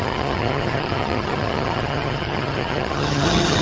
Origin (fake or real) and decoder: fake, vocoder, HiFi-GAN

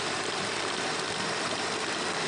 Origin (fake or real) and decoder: real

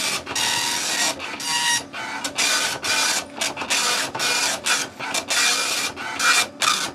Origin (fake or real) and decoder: real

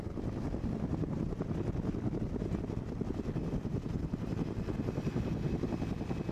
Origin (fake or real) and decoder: real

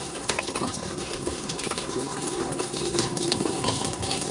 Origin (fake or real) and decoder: fake, codec, SNAC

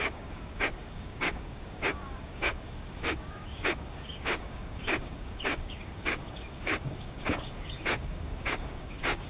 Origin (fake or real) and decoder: fake, codec, DAC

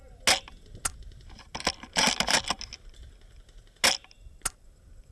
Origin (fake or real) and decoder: real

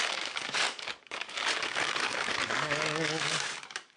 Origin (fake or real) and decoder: fake, codec, DAC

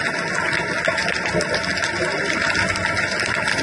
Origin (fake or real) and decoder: real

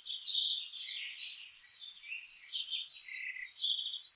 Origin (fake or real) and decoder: real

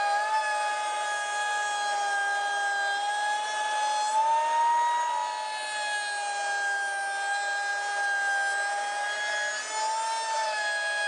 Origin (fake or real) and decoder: real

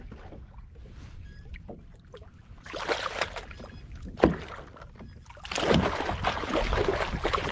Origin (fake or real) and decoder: real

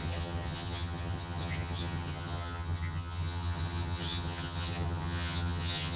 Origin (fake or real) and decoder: fake, vocoder, HiFi-GAN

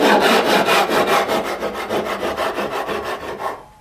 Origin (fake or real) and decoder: fake, vocoder, BigVGAN v2